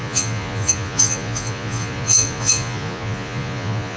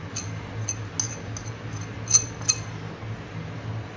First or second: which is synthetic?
first